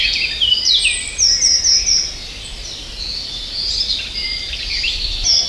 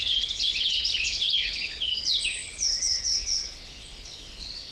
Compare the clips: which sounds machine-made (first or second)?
second